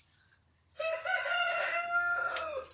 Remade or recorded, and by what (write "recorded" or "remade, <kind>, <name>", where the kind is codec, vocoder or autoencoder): recorded